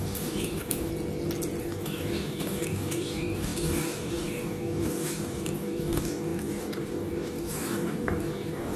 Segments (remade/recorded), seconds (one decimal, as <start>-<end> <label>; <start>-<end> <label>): 0.0-0.9 remade; 0.9-1.6 recorded; 1.6-8.8 remade